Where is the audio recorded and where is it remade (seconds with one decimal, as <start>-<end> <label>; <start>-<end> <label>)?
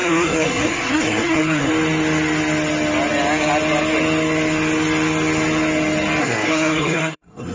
0.0-1.7 remade; 1.7-6.2 recorded; 6.2-7.5 remade